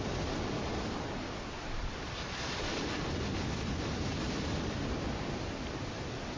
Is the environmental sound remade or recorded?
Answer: recorded